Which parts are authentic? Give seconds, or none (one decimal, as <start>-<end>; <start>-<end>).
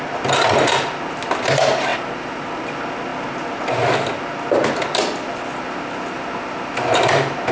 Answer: 0.0-7.5